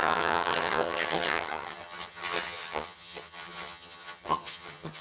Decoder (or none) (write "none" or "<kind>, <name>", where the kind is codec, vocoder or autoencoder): vocoder, HiFi-GAN